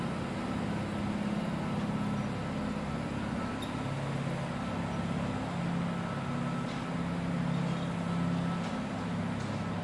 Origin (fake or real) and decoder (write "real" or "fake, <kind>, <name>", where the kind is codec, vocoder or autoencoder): real